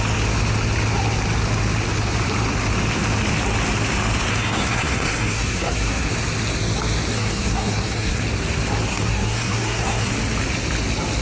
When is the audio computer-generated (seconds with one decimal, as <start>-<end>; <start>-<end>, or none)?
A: 4.3-6.1; 7.1-8.2; 8.9-10.1